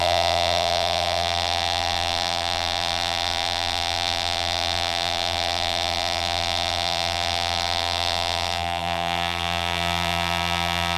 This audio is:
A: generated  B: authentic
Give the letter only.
A